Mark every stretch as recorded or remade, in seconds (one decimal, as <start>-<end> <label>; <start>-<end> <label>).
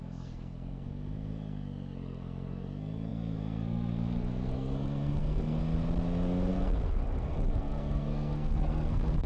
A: 0.0-5.6 remade; 5.6-6.5 recorded; 6.5-9.3 remade